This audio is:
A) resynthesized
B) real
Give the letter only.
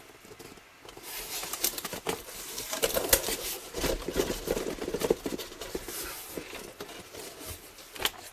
B